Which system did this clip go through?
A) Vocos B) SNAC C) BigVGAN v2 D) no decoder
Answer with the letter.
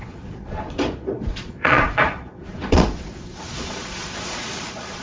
A